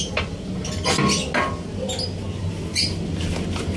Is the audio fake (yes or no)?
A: no